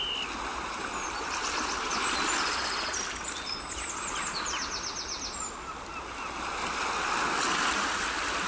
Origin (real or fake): real